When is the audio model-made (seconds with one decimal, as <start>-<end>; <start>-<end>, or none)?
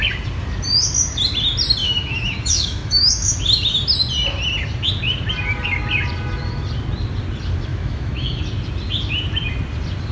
1.8-3.4; 7.7-8.4